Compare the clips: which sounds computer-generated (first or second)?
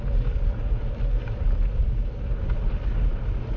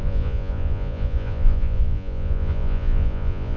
second